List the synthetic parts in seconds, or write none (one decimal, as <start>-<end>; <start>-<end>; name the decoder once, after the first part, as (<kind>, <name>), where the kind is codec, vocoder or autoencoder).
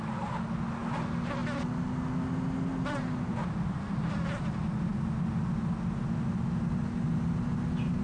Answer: none